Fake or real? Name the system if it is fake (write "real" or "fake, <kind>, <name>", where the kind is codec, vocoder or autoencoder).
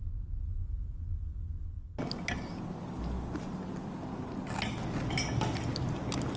real